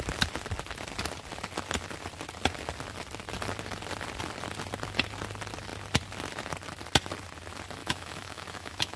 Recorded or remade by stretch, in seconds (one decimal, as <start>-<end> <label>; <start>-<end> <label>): 0.0-7.8 recorded; 7.8-9.0 remade